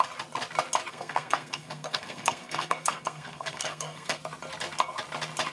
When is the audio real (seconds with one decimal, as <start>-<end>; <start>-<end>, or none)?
0.0-0.9; 4.2-5.5